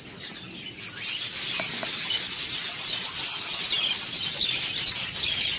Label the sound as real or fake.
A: real